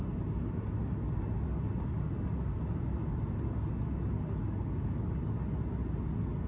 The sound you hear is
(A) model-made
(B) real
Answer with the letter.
B